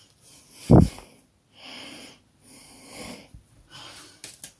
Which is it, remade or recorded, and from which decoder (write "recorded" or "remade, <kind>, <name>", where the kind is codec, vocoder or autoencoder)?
recorded